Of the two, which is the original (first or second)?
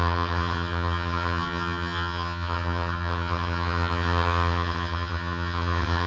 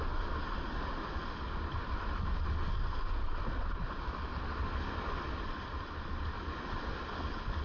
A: second